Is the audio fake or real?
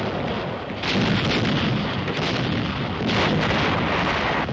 real